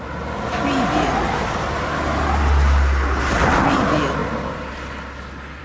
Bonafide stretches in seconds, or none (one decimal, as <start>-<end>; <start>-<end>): 0.0-5.6